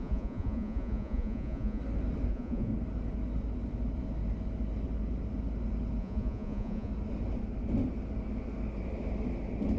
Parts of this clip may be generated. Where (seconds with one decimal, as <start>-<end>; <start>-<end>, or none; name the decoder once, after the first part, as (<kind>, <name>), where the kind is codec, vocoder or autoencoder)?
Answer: 0.0-1.8 (vocoder, Vocos); 2.3-2.7; 6.0-6.9